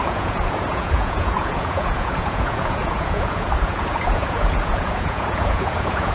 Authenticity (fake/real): fake